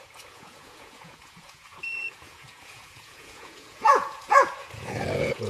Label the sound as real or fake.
fake